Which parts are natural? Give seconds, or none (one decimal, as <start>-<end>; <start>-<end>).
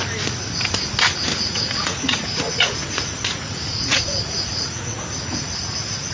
0.0-1.3; 5.0-6.1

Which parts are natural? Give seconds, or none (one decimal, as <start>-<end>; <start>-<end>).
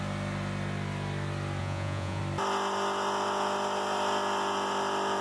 0.0-1.6; 2.2-5.2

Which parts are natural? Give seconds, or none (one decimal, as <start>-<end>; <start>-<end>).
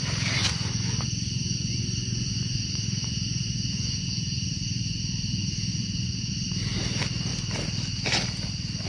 0.0-0.4; 5.0-5.7; 6.3-8.9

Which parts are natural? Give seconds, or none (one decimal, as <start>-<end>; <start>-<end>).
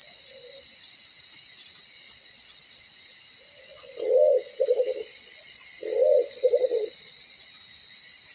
0.6-1.8; 2.8-3.7; 7.5-8.3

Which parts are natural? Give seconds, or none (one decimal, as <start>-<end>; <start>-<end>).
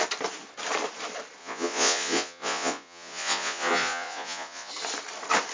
0.0-1.4; 4.7-5.5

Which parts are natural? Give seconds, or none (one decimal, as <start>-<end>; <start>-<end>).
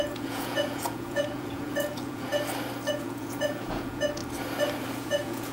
2.3-2.9; 4.2-5.0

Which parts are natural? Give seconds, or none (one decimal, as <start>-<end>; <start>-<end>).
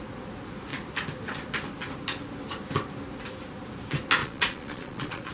0.0-4.2